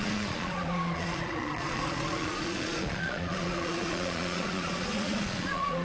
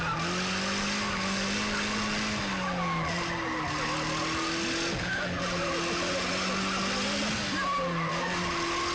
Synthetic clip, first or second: first